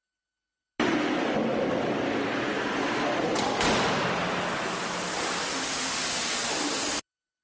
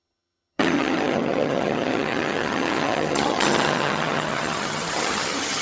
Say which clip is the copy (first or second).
second